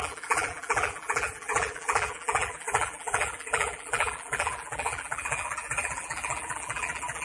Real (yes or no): no